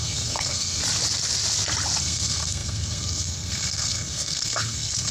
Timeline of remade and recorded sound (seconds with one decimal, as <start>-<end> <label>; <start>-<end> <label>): 0.0-0.8 remade; 0.8-2.0 recorded; 2.0-5.1 remade